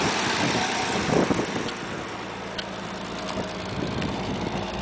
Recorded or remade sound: recorded